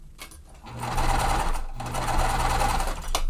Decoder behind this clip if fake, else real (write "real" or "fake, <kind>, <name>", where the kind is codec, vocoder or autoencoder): real